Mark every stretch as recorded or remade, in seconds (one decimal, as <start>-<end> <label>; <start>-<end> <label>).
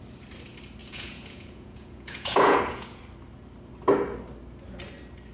0.0-0.8 recorded; 0.8-3.0 remade; 3.0-5.3 recorded